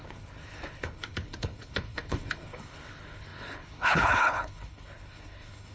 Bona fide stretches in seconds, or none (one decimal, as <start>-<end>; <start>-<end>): none